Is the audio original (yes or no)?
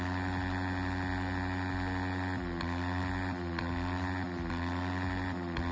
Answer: yes